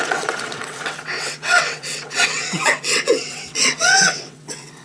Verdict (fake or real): fake